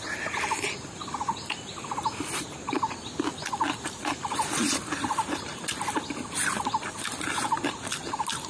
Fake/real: real